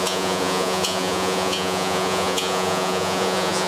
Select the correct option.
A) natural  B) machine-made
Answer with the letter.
B